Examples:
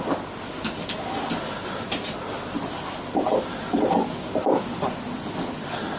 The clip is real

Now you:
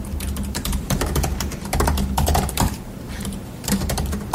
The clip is fake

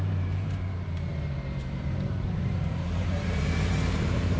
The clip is fake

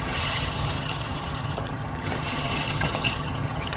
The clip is fake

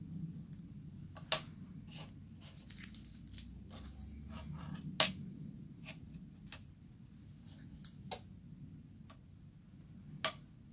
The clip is real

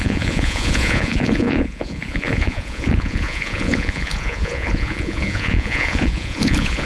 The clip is fake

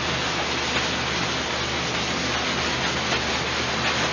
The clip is real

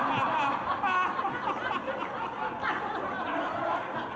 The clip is real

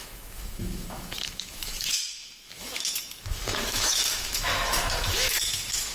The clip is fake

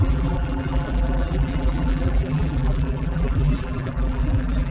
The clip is fake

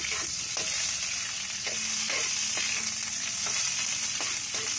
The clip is real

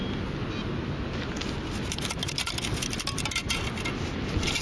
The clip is real